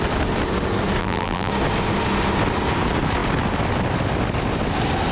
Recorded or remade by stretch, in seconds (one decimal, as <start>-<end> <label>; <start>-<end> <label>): 0.0-1.0 recorded; 1.0-1.5 remade; 1.5-5.1 recorded